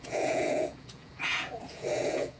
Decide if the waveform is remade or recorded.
remade